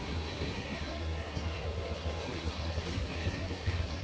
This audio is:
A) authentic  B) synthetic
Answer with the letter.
B